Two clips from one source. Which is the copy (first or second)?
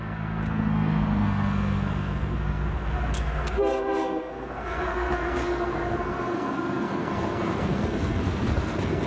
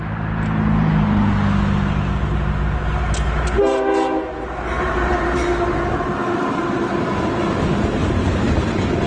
first